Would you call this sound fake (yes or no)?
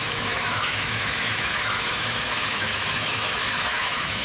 yes